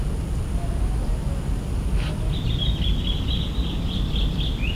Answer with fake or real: real